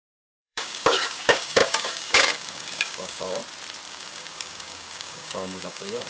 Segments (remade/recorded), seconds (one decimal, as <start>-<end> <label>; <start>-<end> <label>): 0.0-3.4 remade; 3.4-3.9 recorded; 3.9-6.1 remade